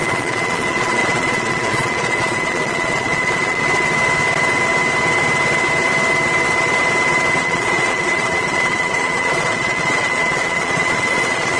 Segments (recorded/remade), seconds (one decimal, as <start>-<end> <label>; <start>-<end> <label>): 0.0-3.6 remade; 3.6-7.4 recorded; 7.4-11.6 remade